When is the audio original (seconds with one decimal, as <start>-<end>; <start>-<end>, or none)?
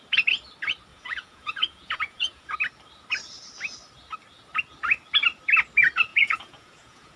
0.0-0.9; 2.5-6.1